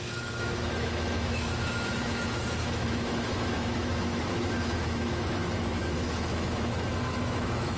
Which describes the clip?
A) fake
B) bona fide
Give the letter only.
A